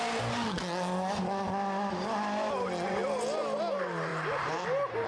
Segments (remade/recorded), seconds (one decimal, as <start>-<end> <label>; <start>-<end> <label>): 0.0-4.1 recorded; 4.1-5.1 remade